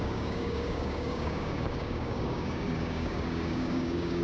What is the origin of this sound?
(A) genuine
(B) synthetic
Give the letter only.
B